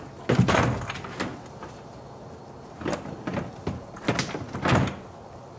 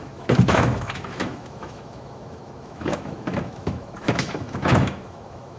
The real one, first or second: first